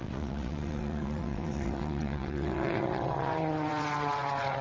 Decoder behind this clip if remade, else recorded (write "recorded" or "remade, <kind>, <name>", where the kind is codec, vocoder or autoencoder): remade, vocoder, WaveNeXt